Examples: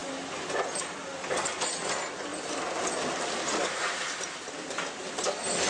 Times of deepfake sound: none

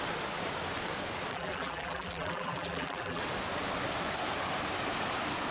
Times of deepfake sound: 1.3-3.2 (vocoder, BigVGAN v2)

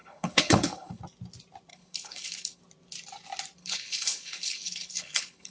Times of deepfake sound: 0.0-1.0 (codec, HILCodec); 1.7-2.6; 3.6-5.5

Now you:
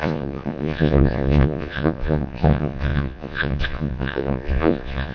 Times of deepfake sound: 0.0-5.1 (vocoder, Vocos)

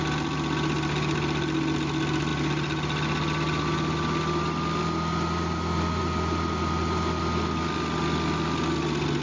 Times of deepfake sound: none